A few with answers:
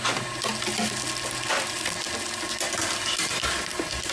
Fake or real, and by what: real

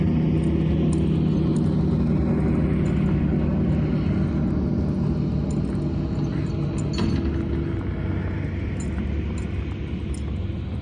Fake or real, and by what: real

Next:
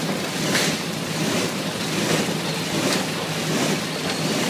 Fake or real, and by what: real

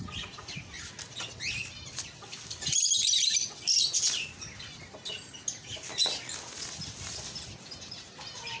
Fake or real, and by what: real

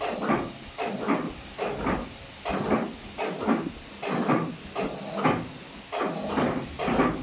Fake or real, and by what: real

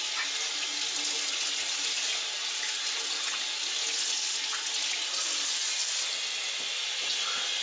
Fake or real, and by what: real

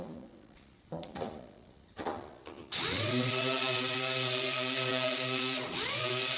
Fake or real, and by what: fake, vocoder, Vocos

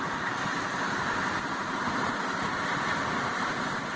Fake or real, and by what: fake, vocoder, BigVGAN v2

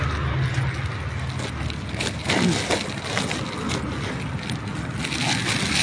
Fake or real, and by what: real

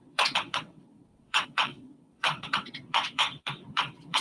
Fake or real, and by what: fake, vocoder, WaveNeXt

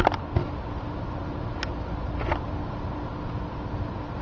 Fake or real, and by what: real